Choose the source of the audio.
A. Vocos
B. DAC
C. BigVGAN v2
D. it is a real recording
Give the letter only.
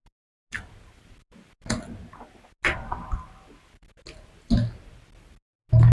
D